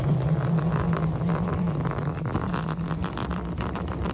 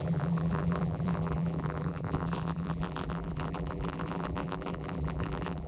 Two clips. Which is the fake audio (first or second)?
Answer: second